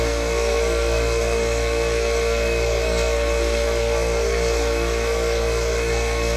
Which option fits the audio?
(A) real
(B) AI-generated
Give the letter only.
B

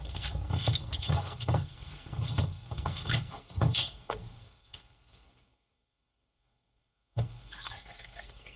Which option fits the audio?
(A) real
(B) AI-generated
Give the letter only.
B